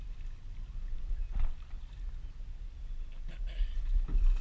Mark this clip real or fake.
real